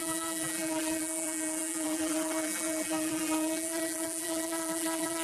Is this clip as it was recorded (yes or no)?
no